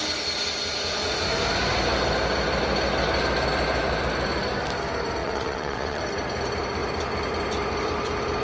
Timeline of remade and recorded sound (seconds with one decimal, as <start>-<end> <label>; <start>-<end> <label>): 0.0-5.2 recorded; 5.2-6.0 remade; 6.0-8.4 recorded